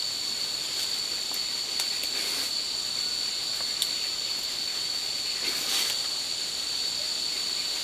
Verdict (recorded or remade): recorded